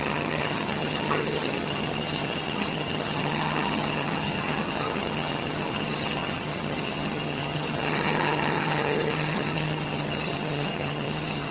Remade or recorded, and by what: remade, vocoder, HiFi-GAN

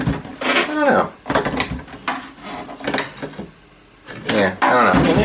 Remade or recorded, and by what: recorded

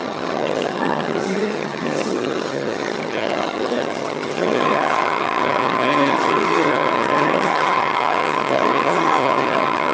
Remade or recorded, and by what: remade, vocoder, HiFi-GAN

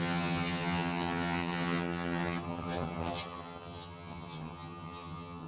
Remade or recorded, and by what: remade, vocoder, HiFi-GAN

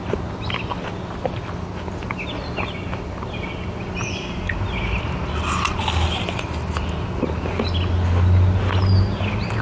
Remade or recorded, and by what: recorded